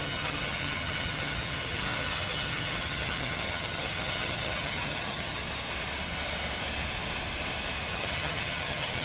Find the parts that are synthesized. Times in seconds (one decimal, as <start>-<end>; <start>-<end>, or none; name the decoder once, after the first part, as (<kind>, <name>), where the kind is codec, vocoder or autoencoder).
0.0-5.4 (vocoder, HiFi-GAN); 7.9-9.0